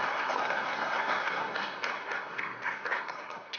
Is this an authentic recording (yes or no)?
no